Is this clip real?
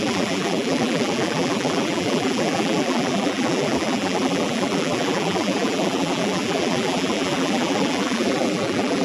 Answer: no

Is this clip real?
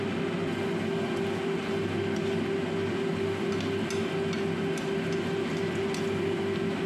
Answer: yes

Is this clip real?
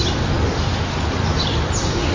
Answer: yes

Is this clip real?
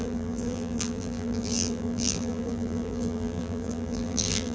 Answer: no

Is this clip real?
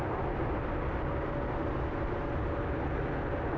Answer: yes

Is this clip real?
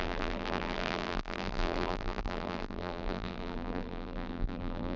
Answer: no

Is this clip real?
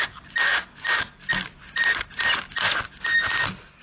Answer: yes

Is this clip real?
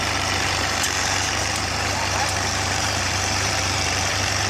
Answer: no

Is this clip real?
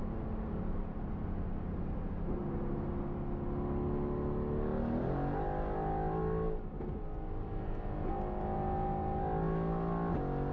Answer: yes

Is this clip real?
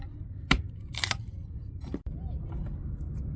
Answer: no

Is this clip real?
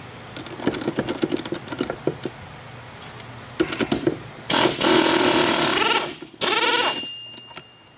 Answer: yes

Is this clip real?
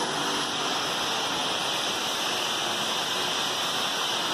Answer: yes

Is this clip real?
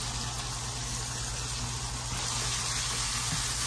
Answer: yes